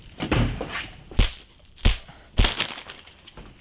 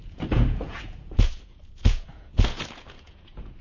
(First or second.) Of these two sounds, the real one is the first